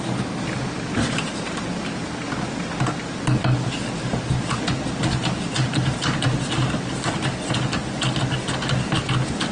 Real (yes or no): yes